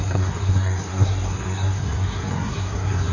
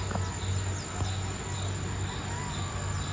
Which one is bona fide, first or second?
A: second